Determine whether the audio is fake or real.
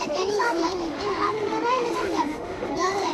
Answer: fake